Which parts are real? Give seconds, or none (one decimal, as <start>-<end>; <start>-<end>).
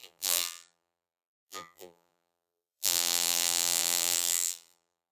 none